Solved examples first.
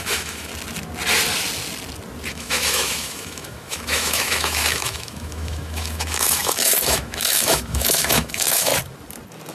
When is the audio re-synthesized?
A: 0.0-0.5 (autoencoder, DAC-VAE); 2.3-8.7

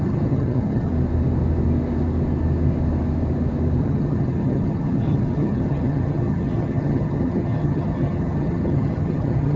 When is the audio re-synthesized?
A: 0.0-0.9 (vocoder, HiFi-GAN); 3.8-9.6

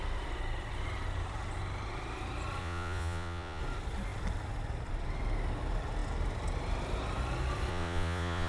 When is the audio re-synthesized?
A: 2.6-3.6 (vocoder, Vocos); 7.7-8.5

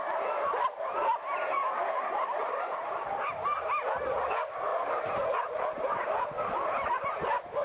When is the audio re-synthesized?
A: 4.7-6.1 (vocoder, BigVGAN v2)

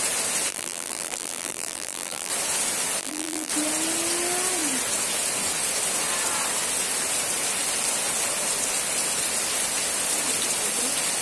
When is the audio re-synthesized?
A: 0.5-2.3 (vocoder, BigVGAN v2); 3.0-3.5